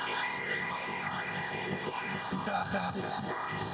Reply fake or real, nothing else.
fake